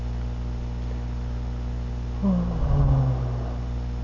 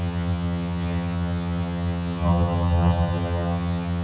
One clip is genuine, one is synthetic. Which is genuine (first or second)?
first